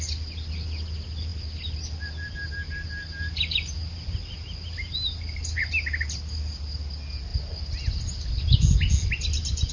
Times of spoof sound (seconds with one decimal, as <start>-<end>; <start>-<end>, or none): none